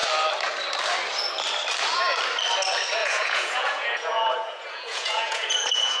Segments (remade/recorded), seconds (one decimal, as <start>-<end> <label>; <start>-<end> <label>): 0.0-3.0 recorded; 3.0-6.0 remade